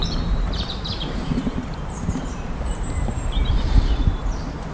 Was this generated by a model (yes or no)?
yes